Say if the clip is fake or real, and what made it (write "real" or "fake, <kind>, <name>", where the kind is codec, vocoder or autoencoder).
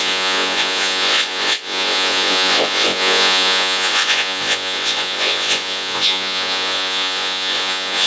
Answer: fake, vocoder, Vocos